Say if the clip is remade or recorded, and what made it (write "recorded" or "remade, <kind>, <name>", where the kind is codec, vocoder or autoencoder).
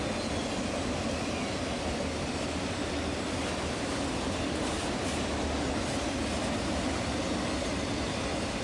recorded